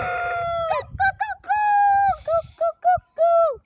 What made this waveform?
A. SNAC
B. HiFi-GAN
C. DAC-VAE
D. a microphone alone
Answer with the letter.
D